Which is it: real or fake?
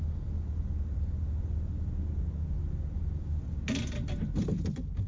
real